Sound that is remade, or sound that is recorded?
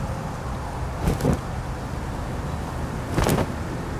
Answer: recorded